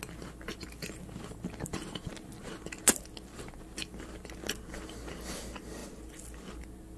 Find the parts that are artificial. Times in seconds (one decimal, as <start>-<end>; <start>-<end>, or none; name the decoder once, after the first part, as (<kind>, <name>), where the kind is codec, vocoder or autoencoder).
none